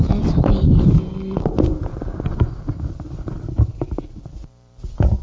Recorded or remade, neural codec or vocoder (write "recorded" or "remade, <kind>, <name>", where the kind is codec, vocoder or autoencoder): remade, vocoder, BigVGAN v2